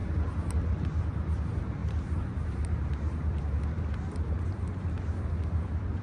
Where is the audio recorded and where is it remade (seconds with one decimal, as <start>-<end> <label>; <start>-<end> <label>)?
0.0-1.8 recorded; 1.8-3.4 remade; 3.4-6.0 recorded